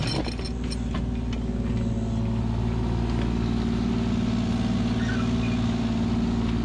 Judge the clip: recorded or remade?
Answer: recorded